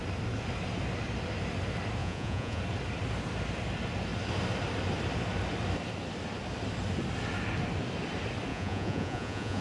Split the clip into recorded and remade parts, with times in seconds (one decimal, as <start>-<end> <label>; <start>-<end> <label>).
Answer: 0.0-2.0 recorded; 2.0-2.6 remade; 2.6-8.5 recorded; 8.5-9.6 remade